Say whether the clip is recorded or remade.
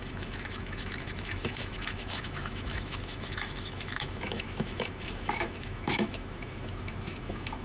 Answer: remade